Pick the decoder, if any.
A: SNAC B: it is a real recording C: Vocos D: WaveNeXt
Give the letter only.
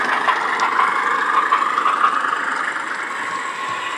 B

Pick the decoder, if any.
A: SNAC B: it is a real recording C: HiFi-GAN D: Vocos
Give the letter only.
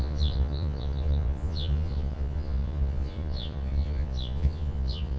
D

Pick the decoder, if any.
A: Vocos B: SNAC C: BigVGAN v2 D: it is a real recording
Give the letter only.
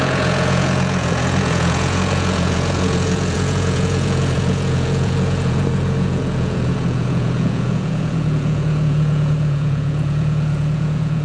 A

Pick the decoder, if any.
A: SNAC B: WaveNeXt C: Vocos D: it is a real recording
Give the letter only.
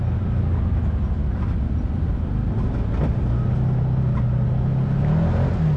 D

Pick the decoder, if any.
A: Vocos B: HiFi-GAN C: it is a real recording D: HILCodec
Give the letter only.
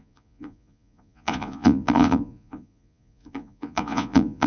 A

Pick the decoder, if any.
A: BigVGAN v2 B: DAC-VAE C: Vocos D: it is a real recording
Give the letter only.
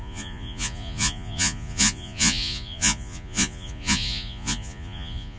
C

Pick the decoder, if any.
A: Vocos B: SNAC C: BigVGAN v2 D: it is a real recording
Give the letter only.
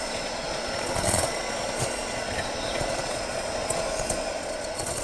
A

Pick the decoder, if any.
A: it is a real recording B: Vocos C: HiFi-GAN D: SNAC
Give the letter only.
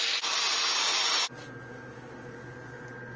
A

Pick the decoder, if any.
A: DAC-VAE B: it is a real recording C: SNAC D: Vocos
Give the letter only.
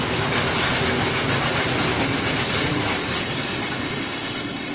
B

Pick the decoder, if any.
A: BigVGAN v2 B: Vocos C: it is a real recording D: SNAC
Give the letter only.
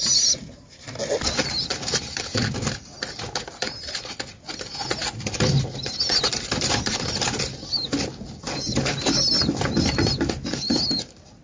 C